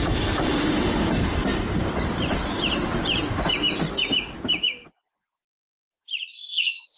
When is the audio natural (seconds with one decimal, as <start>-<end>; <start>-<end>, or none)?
0.0-6.3